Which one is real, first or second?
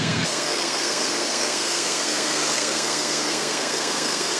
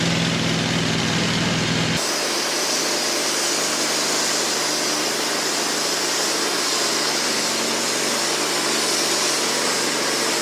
second